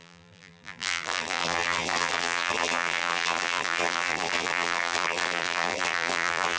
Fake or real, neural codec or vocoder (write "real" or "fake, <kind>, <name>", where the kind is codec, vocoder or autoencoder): fake, vocoder, BigVGAN v2